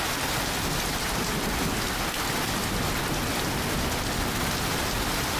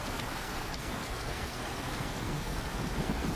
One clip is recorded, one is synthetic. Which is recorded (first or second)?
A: first